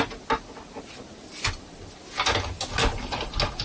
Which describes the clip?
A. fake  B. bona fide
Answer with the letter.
B